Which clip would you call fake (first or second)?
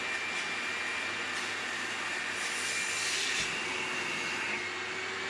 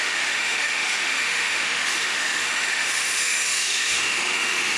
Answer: second